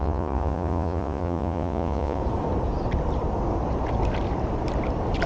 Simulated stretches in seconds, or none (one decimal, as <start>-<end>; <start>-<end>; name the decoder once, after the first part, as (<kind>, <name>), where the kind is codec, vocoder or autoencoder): 0.0-2.2 (vocoder, Vocos)

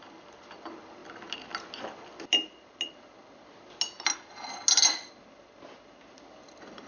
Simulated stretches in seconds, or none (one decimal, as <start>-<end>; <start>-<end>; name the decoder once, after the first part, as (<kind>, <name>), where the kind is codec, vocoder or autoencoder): none